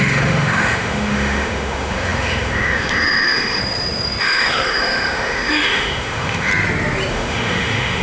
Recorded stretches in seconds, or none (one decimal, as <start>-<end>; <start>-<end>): 3.6-4.2; 6.5-7.1